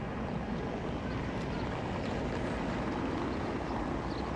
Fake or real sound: real